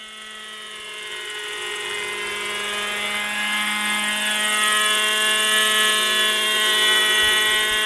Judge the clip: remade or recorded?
recorded